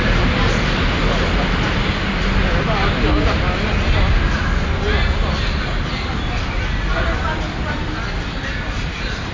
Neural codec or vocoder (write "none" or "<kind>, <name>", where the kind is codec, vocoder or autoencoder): none